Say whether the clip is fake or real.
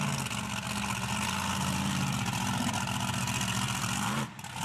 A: real